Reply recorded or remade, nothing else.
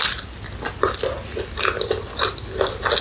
recorded